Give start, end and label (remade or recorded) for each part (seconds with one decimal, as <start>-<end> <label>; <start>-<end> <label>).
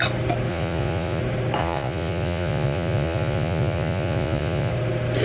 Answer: 0.0-0.5 recorded; 0.5-1.2 remade; 1.2-1.6 recorded; 1.6-4.7 remade; 4.7-5.2 recorded